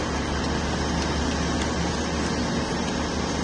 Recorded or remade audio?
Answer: recorded